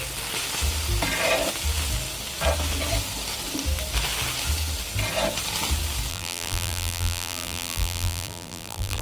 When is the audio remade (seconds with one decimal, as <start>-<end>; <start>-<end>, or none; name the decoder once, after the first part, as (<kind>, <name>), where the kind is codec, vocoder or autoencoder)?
6.1-9.0 (vocoder, BigVGAN v2)